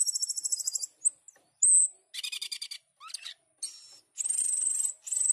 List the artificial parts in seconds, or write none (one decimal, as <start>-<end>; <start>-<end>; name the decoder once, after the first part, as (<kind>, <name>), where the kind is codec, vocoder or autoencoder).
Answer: none